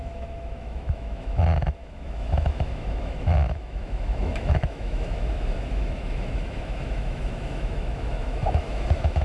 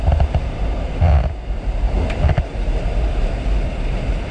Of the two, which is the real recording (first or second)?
second